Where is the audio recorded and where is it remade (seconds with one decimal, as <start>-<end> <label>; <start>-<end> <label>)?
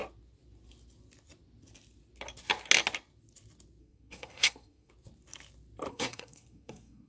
0.0-3.8 recorded; 3.8-4.9 remade; 4.9-5.9 recorded; 5.9-7.1 remade